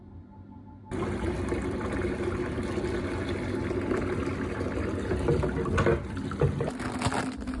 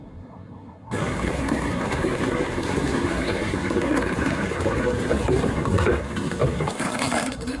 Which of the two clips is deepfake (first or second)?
second